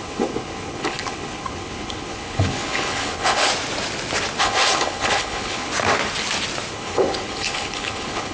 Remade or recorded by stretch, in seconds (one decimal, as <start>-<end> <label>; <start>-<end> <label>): 0.0-3.5 remade; 3.5-4.4 recorded; 4.4-5.7 remade; 5.7-6.7 recorded; 6.7-8.3 remade